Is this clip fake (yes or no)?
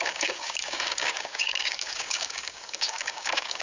yes